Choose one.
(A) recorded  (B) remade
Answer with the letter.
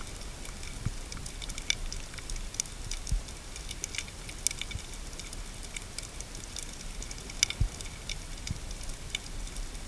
A